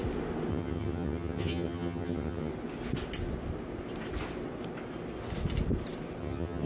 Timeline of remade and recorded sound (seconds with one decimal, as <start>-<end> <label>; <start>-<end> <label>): 0.0-0.5 recorded; 0.5-2.5 remade; 2.5-6.2 recorded; 6.2-6.7 remade